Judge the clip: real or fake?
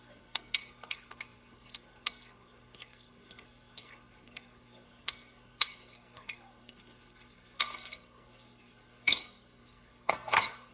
fake